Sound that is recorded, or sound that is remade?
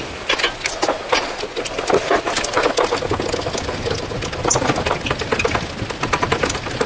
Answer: recorded